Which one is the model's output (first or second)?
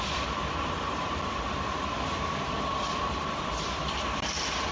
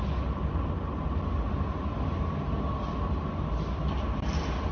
first